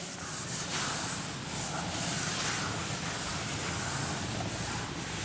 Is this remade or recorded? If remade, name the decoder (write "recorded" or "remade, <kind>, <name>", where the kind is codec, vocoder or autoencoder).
recorded